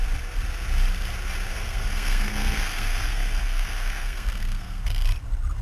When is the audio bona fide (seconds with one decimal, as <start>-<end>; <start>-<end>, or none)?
0.0-1.5; 4.8-5.6